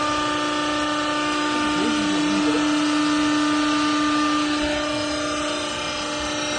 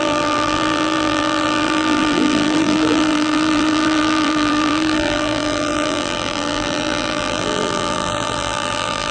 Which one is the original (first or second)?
first